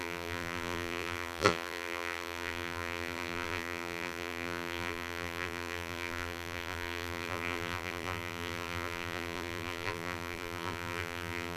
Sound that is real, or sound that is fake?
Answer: fake